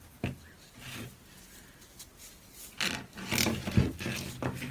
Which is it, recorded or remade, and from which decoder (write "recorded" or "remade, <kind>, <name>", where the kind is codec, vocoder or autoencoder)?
recorded